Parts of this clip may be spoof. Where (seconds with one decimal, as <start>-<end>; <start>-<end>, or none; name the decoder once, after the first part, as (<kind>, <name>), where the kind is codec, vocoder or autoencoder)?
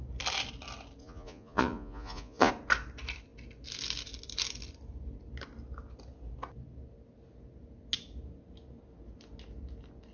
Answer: 1.0-2.5 (vocoder, Vocos)